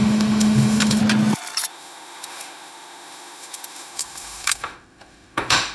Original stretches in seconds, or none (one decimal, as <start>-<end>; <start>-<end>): 1.0-1.7